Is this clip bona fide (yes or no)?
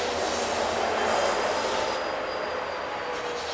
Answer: yes